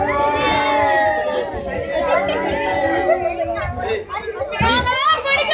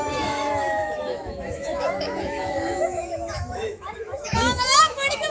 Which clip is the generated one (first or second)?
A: second